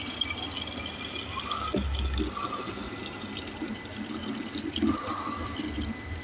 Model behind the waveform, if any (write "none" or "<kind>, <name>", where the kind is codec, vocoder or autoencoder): none